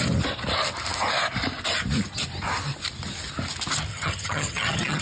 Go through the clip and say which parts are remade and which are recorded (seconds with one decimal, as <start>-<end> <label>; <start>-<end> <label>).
0.0-3.9 recorded; 3.9-5.0 remade